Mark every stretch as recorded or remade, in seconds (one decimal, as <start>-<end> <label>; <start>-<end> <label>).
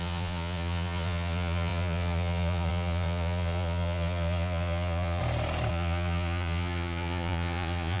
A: 0.0-5.2 remade; 5.2-5.7 recorded; 5.7-8.0 remade